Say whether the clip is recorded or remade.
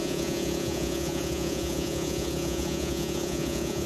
remade